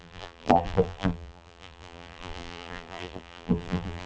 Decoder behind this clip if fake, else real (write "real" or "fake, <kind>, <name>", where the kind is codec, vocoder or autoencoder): fake, vocoder, BigVGAN v2